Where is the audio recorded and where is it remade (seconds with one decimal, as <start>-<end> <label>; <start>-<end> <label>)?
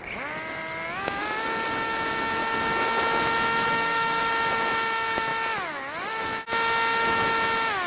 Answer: 0.0-3.7 recorded; 3.7-4.3 remade; 4.3-7.9 recorded